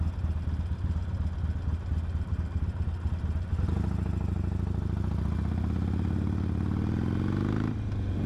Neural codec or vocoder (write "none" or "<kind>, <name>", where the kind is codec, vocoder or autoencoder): none